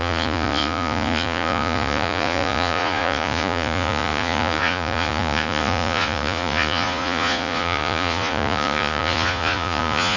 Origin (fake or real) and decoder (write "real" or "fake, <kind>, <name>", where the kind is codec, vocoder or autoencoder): fake, vocoder, Vocos